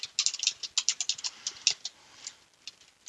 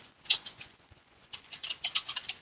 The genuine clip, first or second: first